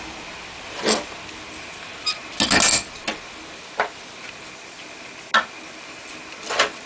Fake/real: real